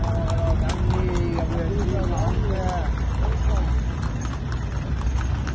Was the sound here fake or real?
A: real